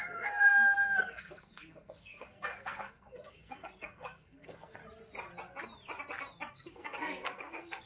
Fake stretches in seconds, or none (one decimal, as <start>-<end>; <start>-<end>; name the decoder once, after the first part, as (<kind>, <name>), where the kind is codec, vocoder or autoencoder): 0.0-4.8 (codec, SNAC); 6.5-7.9